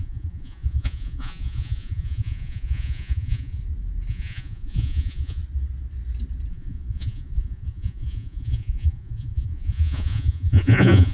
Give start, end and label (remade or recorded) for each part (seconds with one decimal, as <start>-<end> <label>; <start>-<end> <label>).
0.0-3.6 remade; 3.6-4.1 recorded; 4.1-5.4 remade; 5.4-6.5 recorded; 6.5-11.1 remade